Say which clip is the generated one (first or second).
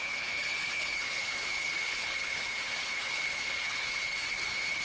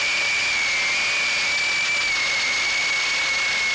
first